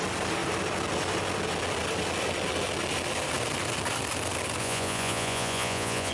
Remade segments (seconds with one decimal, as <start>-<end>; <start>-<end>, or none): 4.6-6.1